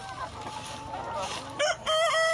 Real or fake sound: real